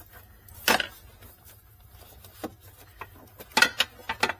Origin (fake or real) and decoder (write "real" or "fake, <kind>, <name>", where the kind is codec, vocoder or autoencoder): real